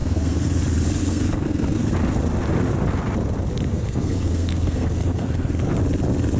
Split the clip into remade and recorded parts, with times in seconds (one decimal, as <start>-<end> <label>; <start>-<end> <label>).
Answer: 0.0-0.6 remade; 0.6-1.0 recorded; 1.0-1.9 remade; 1.9-3.7 recorded; 3.7-5.7 remade; 5.7-6.4 recorded